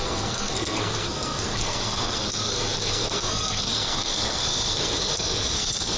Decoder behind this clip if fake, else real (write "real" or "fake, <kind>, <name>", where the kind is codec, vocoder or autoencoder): fake, codec, SNAC